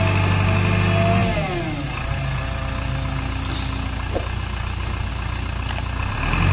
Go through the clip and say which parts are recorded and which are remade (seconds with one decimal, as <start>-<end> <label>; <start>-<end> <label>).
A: 0.0-6.5 recorded